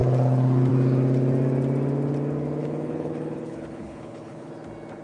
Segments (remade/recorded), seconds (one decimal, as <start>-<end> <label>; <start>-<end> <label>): 0.0-2.6 recorded; 2.6-4.5 remade; 4.5-5.0 recorded